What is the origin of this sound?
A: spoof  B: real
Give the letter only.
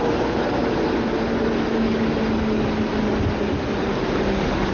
B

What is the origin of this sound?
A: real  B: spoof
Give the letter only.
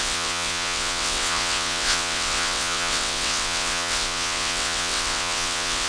B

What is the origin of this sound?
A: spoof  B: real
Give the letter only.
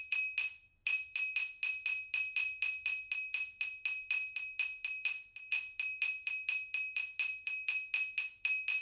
B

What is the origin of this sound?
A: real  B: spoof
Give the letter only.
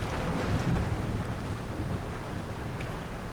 A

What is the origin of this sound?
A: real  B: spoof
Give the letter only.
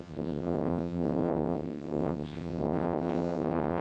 B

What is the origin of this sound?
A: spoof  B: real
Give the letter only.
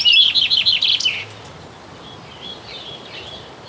B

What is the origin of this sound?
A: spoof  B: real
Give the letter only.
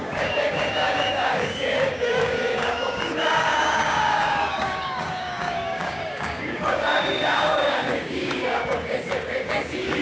A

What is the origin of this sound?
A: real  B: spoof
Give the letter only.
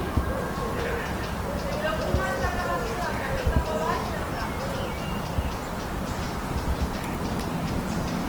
B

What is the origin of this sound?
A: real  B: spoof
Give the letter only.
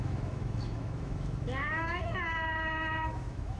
B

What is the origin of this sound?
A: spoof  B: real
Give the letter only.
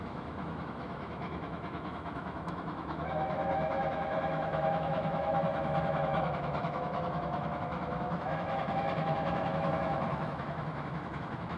A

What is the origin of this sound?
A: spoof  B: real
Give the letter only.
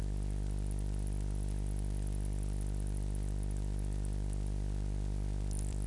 A